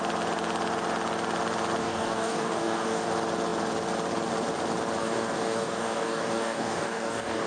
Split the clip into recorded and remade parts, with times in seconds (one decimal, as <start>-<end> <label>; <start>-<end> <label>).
0.0-1.8 recorded; 1.8-3.1 remade; 3.1-5.0 recorded; 5.0-7.5 remade